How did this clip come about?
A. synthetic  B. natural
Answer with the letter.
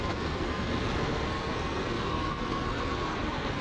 A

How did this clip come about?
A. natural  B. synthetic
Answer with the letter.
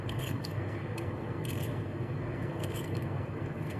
B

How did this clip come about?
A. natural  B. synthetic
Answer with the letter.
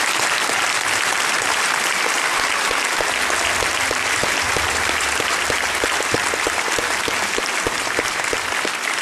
A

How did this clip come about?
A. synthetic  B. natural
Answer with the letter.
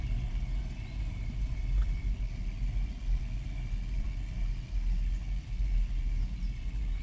B